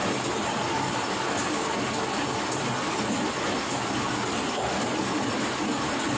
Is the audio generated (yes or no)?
no